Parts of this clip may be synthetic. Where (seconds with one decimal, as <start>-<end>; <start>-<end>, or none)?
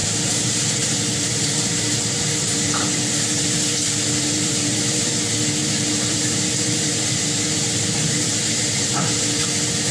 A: 0.0-5.1; 5.6-9.4